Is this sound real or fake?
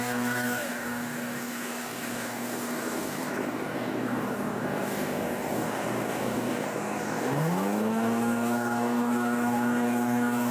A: fake